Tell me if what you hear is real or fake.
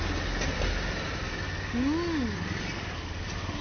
real